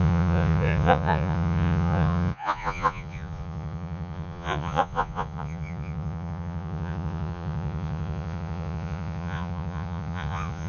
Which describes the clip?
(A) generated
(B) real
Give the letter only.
A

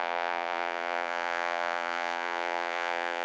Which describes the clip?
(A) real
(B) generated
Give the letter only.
B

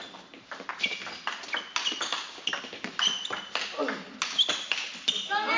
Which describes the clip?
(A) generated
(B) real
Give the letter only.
B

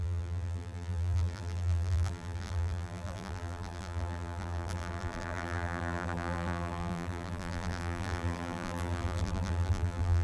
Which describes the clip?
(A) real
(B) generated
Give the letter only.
B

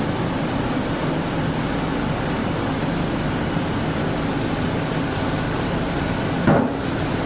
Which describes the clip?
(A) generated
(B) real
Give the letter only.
B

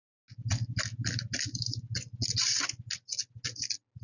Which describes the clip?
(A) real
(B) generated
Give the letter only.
A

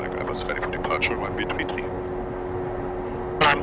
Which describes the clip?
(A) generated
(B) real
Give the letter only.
B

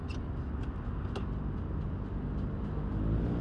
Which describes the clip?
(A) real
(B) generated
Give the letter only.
A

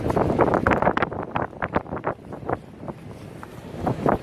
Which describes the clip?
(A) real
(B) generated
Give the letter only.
B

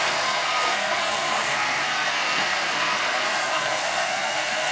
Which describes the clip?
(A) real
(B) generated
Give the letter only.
B